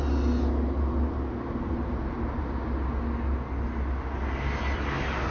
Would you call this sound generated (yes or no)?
no